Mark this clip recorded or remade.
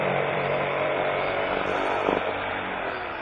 remade